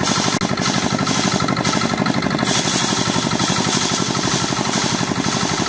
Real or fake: real